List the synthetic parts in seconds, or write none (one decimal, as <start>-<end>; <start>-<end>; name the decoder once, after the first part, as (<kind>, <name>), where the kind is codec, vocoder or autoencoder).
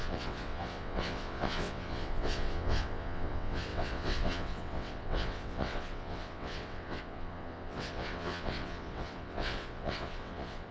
0.0-10.7 (vocoder, WaveNeXt)